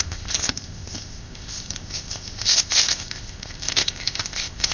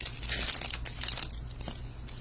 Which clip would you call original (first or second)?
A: second